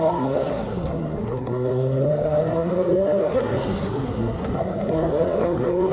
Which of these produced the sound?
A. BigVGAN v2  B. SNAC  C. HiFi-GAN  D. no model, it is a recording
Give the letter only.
B